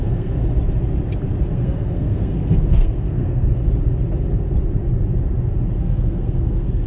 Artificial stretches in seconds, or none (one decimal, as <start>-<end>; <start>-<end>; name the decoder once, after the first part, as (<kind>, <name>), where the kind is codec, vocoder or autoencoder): 0.0-0.4 (codec, SNAC); 1.4-3.6; 5.8-6.9